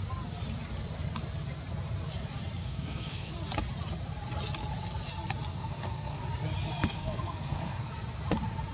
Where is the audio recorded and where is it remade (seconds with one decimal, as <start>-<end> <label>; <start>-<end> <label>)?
0.0-2.6 recorded; 2.6-3.3 remade; 3.3-5.5 recorded; 5.5-6.2 remade; 6.2-6.8 recorded; 6.8-7.9 remade; 7.9-8.7 recorded